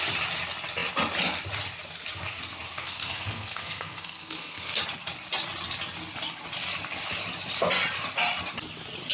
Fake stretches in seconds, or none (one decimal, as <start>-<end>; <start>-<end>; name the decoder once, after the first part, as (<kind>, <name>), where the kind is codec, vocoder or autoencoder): 2.8-4.8 (codec, SNAC)